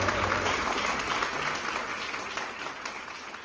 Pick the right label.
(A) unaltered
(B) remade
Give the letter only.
A